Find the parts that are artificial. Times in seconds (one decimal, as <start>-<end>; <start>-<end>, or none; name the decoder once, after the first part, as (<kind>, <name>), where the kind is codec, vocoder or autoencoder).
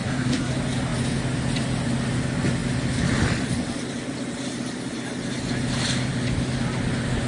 0.0-0.5 (codec, SNAC)